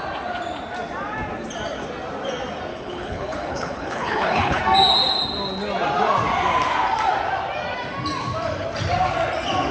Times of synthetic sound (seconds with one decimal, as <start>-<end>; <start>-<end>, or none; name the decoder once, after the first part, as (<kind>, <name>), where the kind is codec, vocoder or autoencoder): 2.7-4.6 (codec, HILCodec)